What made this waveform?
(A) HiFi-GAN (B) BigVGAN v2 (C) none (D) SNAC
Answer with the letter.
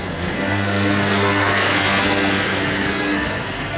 D